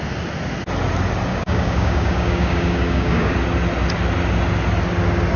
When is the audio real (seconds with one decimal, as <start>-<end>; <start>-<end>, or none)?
0.0-1.3; 3.3-5.4